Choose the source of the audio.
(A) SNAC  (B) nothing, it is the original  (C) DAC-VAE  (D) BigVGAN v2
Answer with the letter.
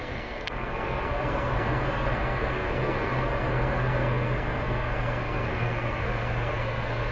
A